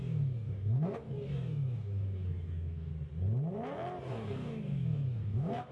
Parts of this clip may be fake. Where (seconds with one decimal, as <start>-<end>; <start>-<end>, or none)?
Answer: 0.0-2.9; 4.1-5.7